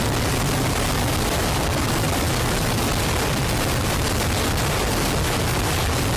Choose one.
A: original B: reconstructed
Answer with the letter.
A